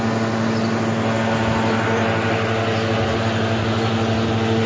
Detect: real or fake real